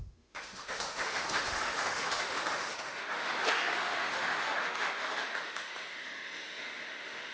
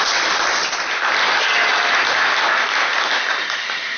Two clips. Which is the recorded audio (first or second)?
second